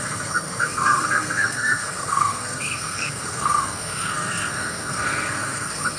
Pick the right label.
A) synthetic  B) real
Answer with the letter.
A